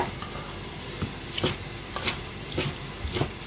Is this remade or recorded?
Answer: recorded